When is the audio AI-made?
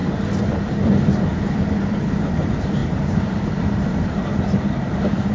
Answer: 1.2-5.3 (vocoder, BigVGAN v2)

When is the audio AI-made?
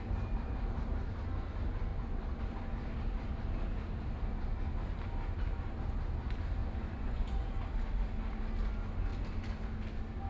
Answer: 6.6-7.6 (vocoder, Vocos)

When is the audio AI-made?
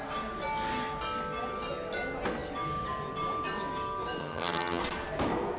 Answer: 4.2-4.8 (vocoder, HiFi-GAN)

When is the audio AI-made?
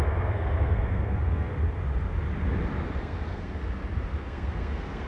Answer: 0.0-1.5 (codec, SNAC); 3.0-3.6; 4.2-5.1